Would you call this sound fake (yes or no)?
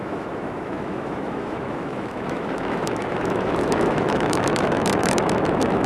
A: yes